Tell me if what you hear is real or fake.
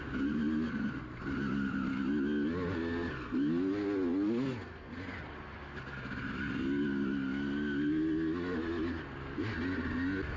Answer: real